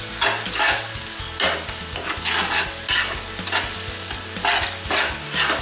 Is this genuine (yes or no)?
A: yes